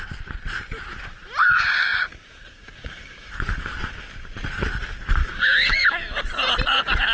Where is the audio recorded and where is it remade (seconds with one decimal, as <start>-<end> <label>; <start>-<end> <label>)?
0.0-1.4 recorded; 1.4-3.3 remade; 3.3-5.2 recorded; 5.2-5.8 remade; 5.8-7.1 recorded